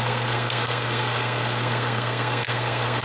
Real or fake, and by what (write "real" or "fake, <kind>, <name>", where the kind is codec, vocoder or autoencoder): fake, codec, SNAC